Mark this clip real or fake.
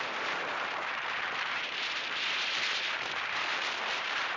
fake